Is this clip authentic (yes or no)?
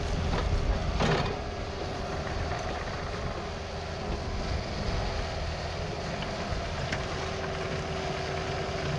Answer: yes